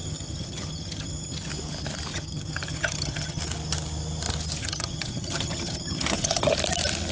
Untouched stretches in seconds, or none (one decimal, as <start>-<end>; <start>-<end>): 1.5-2.1; 3.4-4.6; 6.5-7.1

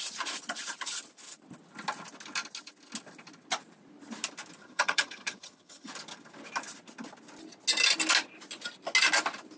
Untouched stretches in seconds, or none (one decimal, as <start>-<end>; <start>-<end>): 0.0-4.6; 5.9-9.6